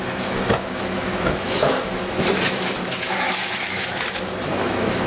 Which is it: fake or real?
fake